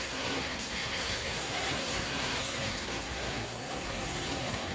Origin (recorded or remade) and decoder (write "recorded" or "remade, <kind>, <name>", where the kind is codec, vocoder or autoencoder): remade, codec, SNAC